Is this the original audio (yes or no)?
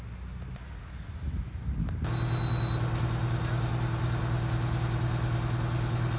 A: yes